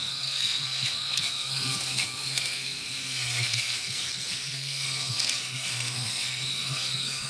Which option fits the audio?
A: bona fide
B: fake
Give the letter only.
B